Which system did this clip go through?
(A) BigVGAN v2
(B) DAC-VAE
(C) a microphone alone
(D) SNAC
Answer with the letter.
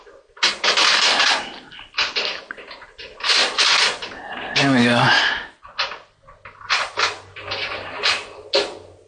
C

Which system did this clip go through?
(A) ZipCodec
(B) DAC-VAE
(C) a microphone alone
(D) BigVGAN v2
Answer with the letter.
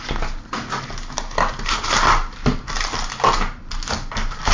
C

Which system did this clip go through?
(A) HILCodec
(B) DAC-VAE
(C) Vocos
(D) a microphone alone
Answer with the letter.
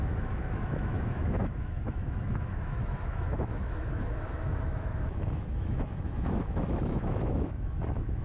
B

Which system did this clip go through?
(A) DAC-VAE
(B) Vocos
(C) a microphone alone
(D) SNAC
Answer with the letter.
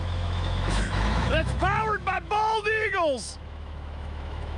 A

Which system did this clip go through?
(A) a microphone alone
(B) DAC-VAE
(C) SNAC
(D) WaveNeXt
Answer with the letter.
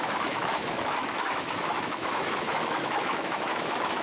B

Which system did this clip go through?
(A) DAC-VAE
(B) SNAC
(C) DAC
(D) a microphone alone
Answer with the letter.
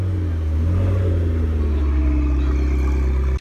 D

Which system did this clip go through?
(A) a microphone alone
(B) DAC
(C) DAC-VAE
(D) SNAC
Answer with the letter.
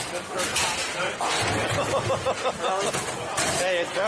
A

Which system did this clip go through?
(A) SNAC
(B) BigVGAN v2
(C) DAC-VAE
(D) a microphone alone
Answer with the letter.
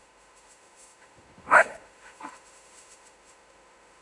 C